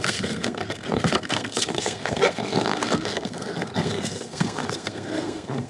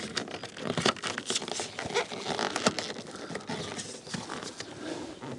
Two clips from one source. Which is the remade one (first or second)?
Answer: first